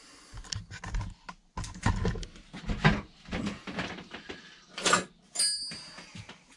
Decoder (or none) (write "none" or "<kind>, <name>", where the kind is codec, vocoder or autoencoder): none